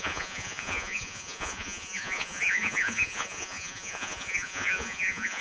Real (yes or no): no